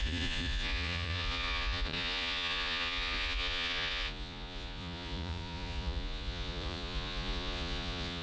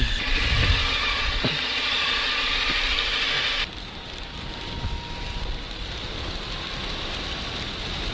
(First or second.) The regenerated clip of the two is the first